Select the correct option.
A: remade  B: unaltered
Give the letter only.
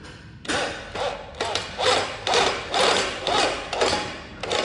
B